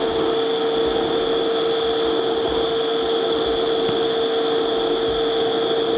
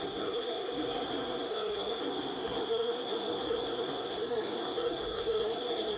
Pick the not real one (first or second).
second